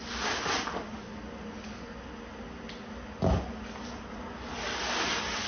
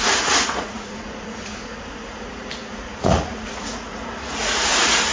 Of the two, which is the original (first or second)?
first